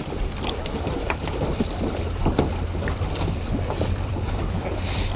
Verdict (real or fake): fake